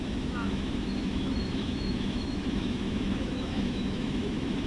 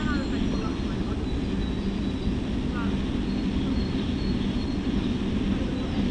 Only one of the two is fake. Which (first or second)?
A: first